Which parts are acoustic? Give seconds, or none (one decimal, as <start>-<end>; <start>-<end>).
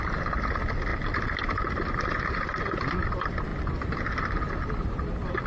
0.9-1.6; 3.5-4.2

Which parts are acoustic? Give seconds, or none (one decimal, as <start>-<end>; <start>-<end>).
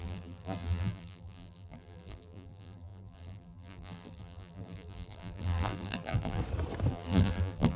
6.4-6.9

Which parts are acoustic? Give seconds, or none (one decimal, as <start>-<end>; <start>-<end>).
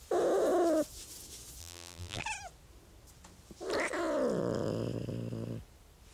0.0-1.6; 2.2-6.1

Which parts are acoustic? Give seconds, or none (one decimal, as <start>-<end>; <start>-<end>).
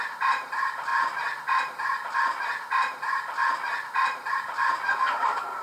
0.9-4.3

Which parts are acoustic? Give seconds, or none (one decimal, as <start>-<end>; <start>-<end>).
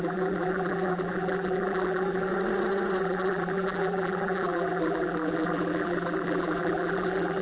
2.3-3.0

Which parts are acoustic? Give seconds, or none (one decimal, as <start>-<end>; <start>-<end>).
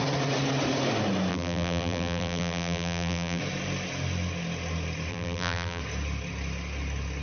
0.0-1.3; 3.4-5.1; 5.8-7.2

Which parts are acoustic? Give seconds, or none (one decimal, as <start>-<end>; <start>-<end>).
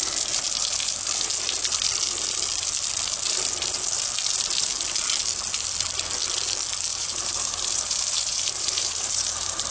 0.0-6.9